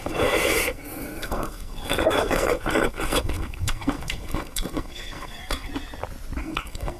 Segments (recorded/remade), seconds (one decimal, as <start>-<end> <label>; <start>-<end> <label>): 0.0-5.7 remade; 5.7-6.4 recorded; 6.4-7.0 remade